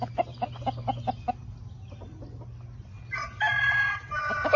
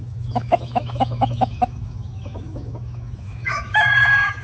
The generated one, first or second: second